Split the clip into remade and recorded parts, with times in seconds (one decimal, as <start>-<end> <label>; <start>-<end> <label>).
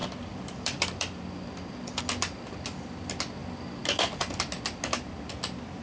0.0-2.0 remade; 2.0-5.8 recorded